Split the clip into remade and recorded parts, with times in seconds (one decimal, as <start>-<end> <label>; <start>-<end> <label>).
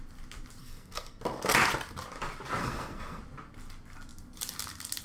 0.0-0.6 recorded; 0.6-1.2 remade; 1.2-2.6 recorded; 2.6-3.2 remade; 3.2-5.0 recorded